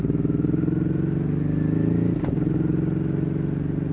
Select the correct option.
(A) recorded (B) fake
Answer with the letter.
A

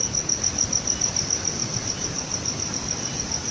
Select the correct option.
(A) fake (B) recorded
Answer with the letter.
B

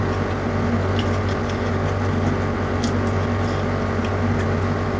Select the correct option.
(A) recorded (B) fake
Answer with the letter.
A